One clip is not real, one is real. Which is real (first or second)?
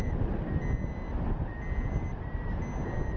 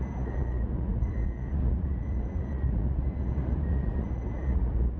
first